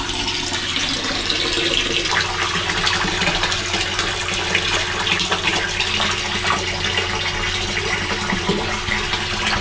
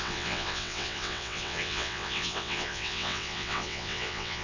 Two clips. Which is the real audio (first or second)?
first